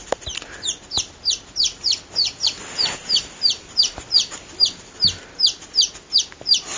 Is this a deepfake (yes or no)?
no